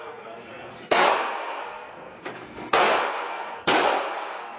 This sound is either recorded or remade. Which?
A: remade